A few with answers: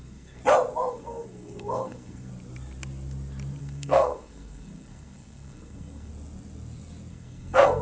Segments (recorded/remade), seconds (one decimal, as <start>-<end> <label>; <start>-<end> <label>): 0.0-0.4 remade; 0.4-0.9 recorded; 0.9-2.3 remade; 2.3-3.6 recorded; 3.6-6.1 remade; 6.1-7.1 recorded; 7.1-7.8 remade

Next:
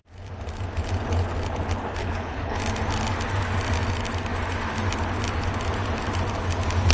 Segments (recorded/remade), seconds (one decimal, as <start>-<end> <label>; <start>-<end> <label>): 0.0-2.0 recorded; 2.0-2.6 remade; 2.6-6.9 recorded

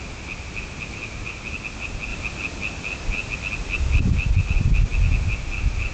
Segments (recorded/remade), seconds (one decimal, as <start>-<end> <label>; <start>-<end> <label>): 0.0-5.9 recorded

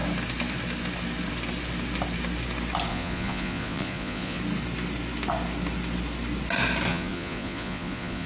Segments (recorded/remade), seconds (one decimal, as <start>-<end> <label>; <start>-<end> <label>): 0.0-2.9 recorded; 2.9-4.4 remade; 4.4-6.9 recorded; 6.9-8.3 remade